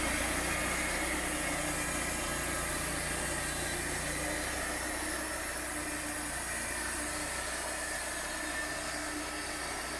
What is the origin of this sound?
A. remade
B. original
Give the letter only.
B